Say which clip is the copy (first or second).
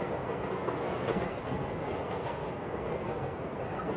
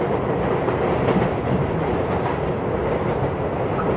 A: first